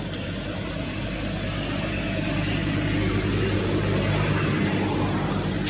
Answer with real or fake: real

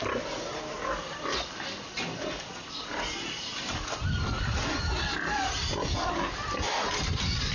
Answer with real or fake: real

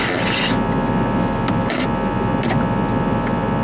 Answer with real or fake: real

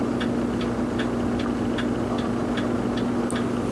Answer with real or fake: real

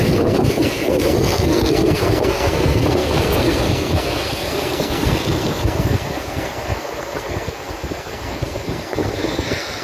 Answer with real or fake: fake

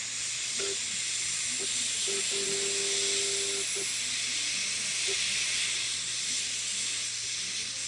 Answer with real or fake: real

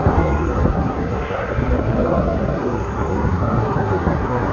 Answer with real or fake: fake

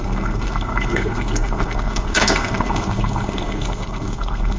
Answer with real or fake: fake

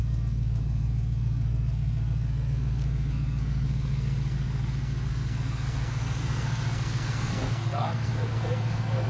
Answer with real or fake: fake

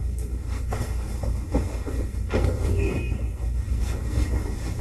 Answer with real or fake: fake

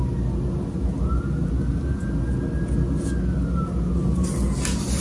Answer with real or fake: real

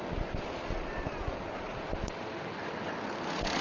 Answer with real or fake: real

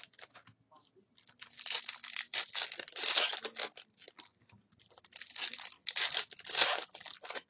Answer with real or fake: real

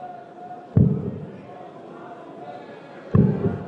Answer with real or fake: real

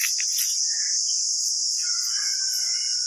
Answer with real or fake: real